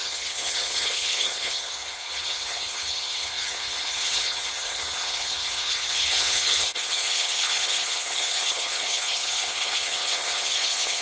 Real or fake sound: fake